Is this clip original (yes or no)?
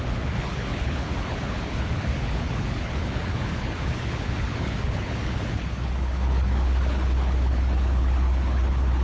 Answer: no